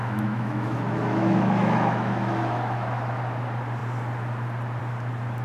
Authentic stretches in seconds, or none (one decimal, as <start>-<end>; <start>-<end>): 3.2-5.4